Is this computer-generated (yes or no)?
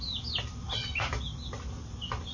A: no